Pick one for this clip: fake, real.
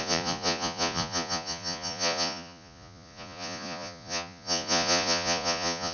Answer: fake